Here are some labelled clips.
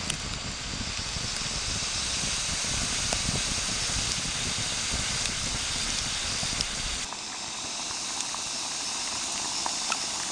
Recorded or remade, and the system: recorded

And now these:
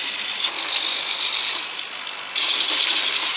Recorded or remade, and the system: recorded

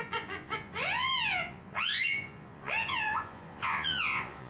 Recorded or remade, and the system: remade, vocoder, Vocos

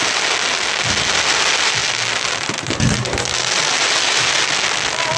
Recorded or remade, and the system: recorded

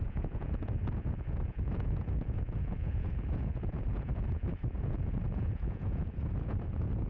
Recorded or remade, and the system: remade, vocoder, Vocos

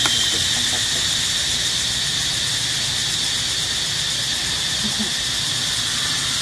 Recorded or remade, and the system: recorded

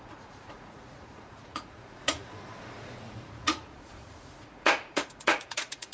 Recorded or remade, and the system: remade, vocoder, Vocos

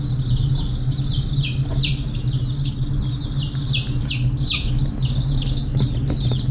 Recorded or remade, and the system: recorded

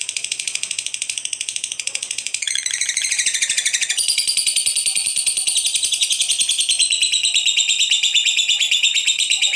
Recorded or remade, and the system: remade, vocoder, Vocos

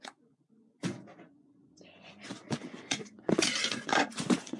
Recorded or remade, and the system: remade, vocoder, Vocos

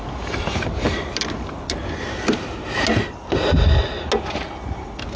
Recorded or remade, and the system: recorded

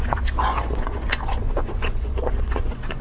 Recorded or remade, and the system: remade, vocoder, Vocos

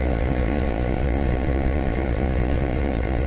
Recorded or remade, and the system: remade, vocoder, Vocos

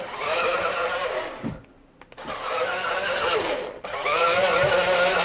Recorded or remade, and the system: recorded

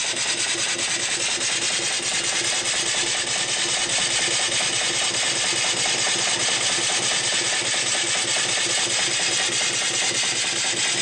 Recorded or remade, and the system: recorded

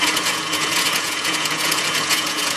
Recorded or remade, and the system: remade, vocoder, Vocos